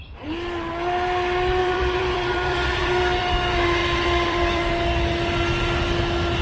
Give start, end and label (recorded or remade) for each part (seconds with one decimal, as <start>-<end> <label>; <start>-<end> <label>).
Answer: 0.0-1.6 recorded; 1.6-3.3 remade; 3.3-3.8 recorded; 3.8-4.7 remade; 4.7-6.4 recorded